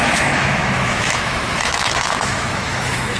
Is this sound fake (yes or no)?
yes